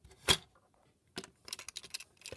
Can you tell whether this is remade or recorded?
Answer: recorded